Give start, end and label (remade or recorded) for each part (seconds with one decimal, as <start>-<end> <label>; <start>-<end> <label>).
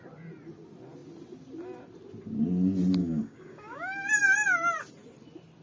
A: 0.0-3.0 recorded; 3.0-4.1 remade; 4.1-5.6 recorded